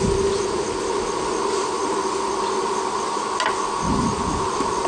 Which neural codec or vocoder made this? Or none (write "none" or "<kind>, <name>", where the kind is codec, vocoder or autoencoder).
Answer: none